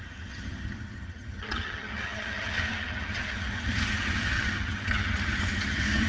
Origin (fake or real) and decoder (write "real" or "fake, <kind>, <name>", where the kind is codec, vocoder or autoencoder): fake, vocoder, HiFi-GAN